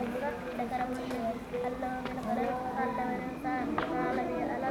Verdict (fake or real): real